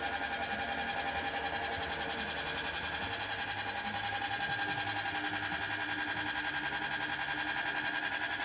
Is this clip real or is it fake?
real